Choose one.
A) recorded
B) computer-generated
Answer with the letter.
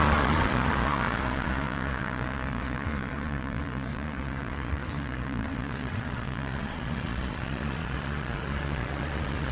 B